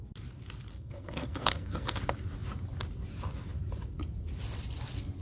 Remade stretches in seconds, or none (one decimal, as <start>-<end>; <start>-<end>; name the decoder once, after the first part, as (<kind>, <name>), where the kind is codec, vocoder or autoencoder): 0.7-2.0 (codec, SNAC)